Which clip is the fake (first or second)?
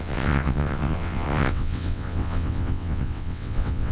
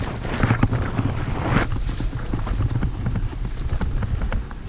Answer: first